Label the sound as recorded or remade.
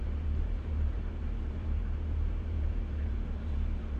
remade